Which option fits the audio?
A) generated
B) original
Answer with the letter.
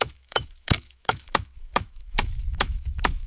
A